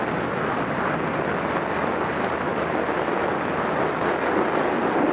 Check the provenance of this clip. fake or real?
real